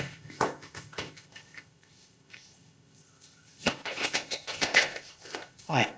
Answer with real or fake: fake